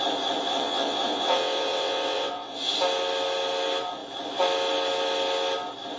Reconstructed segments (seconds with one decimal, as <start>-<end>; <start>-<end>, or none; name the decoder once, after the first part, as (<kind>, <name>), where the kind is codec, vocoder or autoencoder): 0.5-2.7 (vocoder, WaveNeXt)